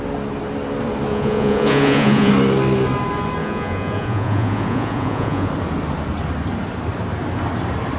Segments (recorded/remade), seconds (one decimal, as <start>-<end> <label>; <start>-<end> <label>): 0.0-1.1 recorded; 1.1-2.3 remade; 2.3-3.4 recorded; 3.4-5.5 remade; 5.5-8.0 recorded